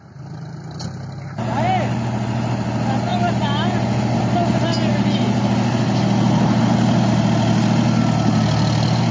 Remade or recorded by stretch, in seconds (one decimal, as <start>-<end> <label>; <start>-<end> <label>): 0.0-9.1 recorded